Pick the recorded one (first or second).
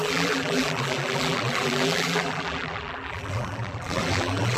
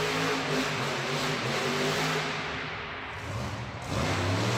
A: second